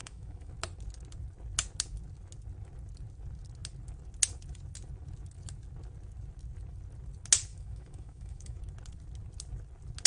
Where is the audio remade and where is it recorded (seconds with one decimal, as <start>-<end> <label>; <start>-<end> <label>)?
0.0-0.5 remade; 0.5-7.5 recorded; 7.5-8.6 remade; 8.6-10.1 recorded